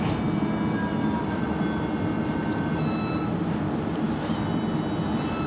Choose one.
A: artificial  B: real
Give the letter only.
B